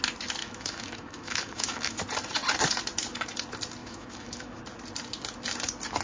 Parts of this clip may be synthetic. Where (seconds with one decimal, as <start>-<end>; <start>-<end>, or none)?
0.4-2.0; 3.8-4.6